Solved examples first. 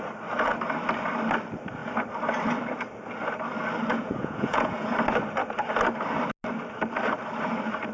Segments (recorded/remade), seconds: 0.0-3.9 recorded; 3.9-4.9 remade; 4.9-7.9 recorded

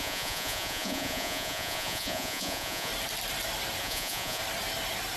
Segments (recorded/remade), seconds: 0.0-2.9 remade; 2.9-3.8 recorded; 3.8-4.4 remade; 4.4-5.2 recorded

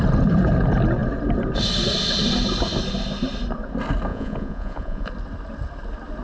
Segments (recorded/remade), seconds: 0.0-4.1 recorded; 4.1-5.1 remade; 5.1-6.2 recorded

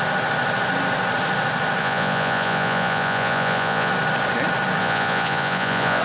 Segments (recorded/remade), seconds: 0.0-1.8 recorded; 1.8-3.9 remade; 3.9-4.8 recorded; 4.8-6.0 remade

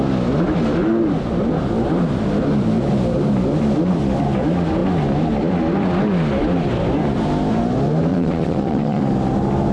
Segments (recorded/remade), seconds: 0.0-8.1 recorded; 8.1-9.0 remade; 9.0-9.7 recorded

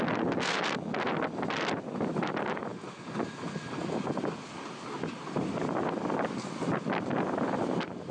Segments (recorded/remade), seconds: 0.0-8.1 recorded

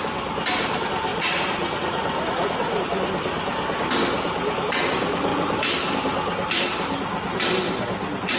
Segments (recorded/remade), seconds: 0.0-1.1 recorded; 1.1-2.8 remade; 2.8-8.4 recorded

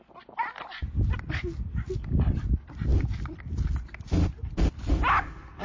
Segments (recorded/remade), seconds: 0.0-5.6 recorded